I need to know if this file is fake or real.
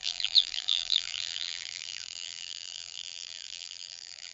fake